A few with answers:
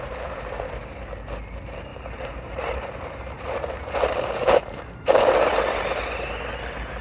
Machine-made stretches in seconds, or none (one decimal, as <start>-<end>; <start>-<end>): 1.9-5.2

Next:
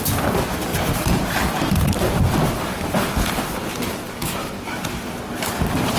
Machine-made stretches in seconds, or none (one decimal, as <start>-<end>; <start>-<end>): 0.7-3.0; 3.6-4.4

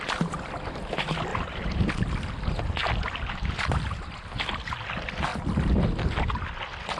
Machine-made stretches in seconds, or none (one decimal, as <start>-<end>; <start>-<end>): 1.3-1.9; 2.8-4.2